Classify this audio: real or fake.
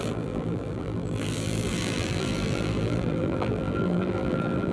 fake